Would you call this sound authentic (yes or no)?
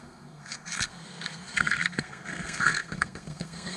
no